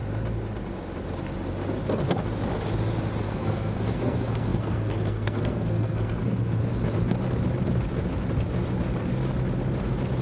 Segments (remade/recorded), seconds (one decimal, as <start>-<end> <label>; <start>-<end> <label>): 0.0-3.2 recorded; 3.2-6.6 remade; 6.6-10.2 recorded

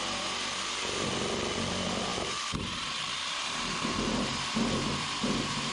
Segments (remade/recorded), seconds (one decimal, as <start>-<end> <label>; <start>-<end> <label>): 0.0-1.1 remade; 1.1-1.7 recorded; 1.7-5.7 remade

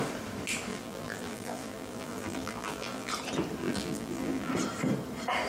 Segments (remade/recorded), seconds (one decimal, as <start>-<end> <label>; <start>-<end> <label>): 0.0-0.7 recorded; 0.7-3.1 remade; 3.1-3.6 recorded; 3.6-4.5 remade; 4.5-5.5 recorded

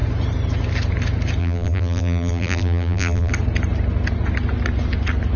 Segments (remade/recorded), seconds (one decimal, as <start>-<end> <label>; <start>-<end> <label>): 0.0-1.4 recorded; 1.4-3.3 remade; 3.3-5.4 recorded

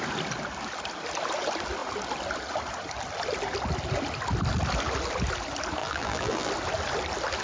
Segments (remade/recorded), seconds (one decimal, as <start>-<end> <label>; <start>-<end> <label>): 0.0-5.8 recorded; 5.8-6.5 remade; 6.5-7.4 recorded